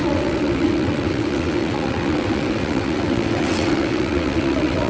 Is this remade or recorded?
remade